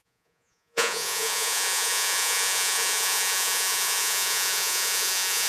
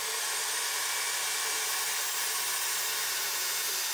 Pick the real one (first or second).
second